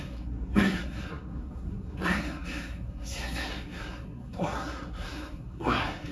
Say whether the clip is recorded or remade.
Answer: remade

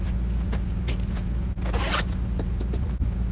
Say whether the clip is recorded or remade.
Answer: recorded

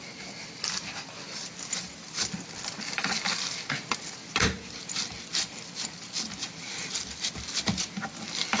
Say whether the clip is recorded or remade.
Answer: remade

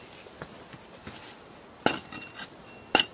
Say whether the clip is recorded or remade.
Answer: recorded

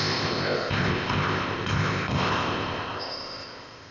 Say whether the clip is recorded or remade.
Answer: remade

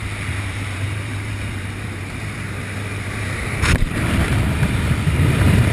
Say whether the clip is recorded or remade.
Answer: remade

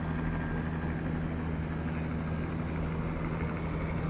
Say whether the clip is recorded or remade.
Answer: recorded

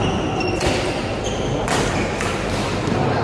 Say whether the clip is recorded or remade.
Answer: remade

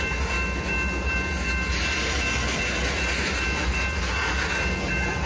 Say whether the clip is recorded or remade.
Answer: recorded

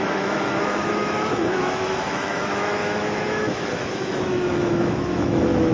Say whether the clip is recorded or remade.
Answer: remade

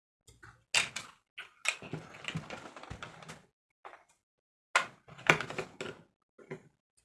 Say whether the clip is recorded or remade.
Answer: recorded